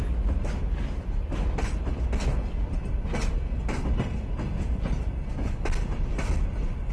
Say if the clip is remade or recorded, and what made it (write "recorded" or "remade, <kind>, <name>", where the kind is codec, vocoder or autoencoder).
recorded